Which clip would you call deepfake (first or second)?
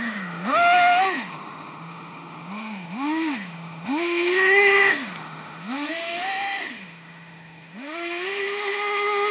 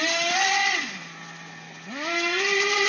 first